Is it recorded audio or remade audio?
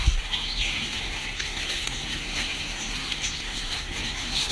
remade